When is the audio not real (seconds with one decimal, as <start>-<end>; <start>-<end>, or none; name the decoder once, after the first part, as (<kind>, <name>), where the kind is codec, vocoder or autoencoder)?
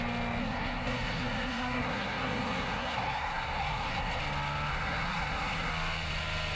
0.4-4.2 (codec, SNAC); 4.7-5.7